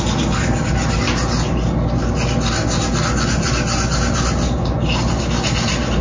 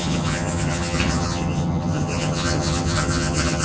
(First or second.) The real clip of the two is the first